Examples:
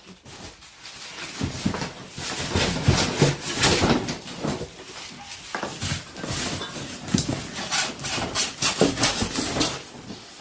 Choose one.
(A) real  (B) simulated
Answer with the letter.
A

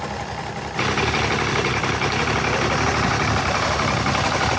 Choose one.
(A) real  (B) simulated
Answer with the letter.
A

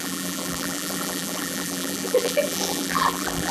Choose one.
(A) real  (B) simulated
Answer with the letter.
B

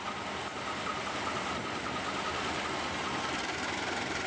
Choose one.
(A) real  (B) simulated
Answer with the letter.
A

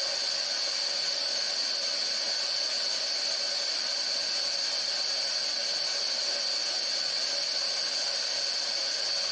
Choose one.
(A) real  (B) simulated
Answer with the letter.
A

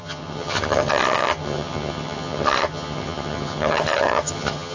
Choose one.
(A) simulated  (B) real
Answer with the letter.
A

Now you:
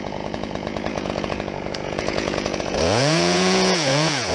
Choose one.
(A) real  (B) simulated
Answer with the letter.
B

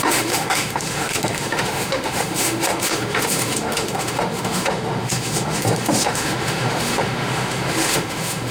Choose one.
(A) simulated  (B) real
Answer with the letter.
A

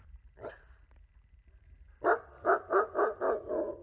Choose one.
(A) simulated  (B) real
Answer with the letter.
B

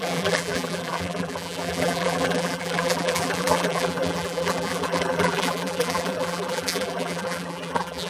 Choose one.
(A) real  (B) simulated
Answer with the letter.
B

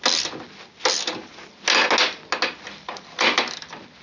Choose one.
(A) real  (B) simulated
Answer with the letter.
A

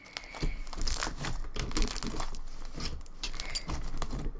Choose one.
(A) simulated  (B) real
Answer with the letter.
B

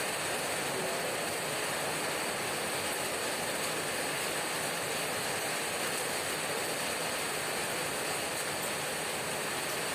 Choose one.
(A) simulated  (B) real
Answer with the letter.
B